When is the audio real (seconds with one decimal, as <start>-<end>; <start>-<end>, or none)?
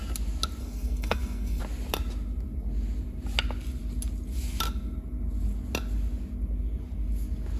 0.0-0.6; 1.6-7.6